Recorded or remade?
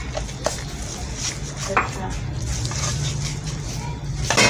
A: recorded